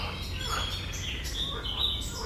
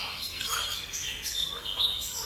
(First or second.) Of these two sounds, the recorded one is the first